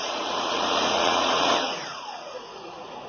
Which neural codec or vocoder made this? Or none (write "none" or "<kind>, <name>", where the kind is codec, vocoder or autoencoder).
vocoder, Vocos